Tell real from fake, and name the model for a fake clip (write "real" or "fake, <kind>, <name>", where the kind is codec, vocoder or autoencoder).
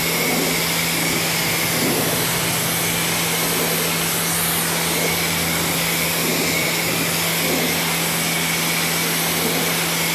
real